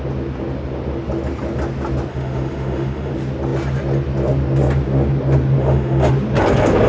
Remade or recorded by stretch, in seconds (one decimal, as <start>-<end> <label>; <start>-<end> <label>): 0.0-2.1 recorded; 2.1-3.1 remade; 3.1-5.6 recorded; 5.6-6.1 remade; 6.1-6.9 recorded